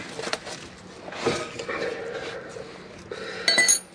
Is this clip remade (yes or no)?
no